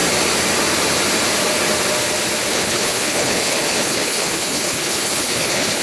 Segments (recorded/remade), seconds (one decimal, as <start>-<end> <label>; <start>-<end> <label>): 0.0-2.5 recorded; 2.5-5.8 remade